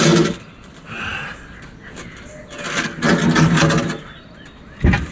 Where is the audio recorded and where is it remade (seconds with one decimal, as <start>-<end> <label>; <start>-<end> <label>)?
0.0-5.1 recorded